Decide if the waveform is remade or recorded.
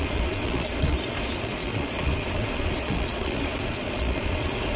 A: remade